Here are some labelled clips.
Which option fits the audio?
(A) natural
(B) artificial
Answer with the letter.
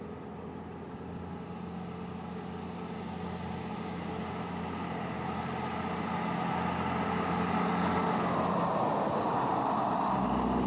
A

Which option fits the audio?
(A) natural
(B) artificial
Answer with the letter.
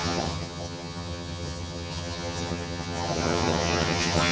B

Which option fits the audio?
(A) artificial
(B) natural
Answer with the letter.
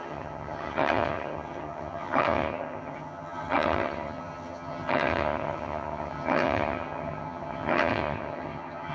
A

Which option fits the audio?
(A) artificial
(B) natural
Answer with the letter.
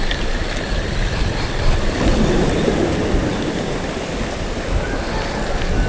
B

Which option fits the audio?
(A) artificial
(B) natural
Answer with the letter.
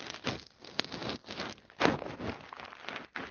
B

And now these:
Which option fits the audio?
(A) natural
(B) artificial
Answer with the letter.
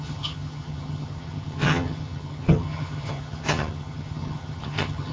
B